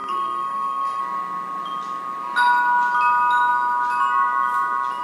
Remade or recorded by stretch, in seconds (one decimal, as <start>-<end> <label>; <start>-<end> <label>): 0.0-1.0 remade; 1.0-5.0 recorded